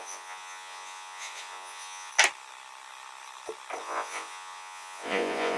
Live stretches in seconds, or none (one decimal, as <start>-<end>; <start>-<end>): 2.1-3.8